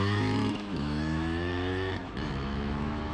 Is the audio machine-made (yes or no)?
yes